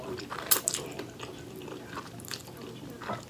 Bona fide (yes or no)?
yes